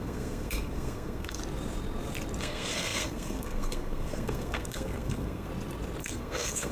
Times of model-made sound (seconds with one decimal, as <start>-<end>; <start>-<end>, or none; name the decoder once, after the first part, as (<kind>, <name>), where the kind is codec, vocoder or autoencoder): 0.0-1.4 (codec, SNAC); 2.4-5.5; 6.0-6.7